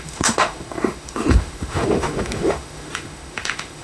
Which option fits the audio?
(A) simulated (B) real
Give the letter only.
A